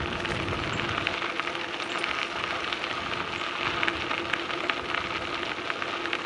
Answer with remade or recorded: recorded